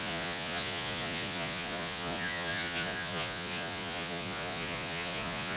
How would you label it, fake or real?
fake